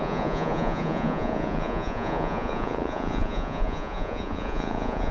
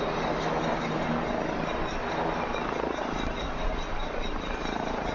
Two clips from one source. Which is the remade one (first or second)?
first